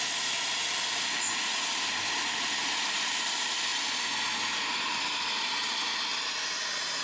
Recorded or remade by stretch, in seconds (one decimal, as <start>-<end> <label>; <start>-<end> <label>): 0.0-3.7 recorded; 3.7-4.7 remade; 4.7-7.0 recorded